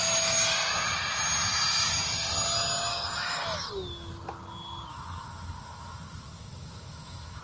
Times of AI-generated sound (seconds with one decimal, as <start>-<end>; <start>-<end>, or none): 2.9-3.7; 4.9-7.4

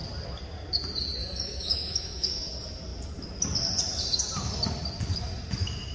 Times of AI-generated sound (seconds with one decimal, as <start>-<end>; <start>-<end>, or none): 1.2-2.5